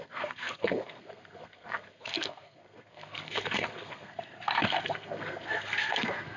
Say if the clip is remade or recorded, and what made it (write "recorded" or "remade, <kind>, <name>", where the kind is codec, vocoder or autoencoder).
remade, codec, SNAC